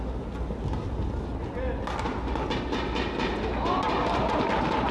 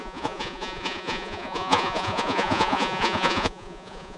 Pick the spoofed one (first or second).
second